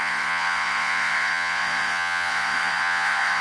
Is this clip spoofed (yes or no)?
yes